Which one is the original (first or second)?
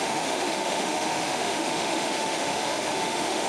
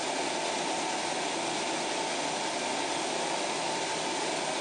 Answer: second